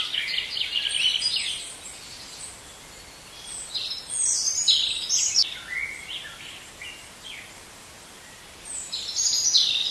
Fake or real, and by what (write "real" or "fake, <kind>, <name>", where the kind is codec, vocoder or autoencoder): real